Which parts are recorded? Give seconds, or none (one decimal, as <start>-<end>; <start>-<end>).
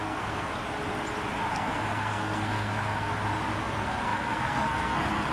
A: 0.5-1.5; 3.1-3.6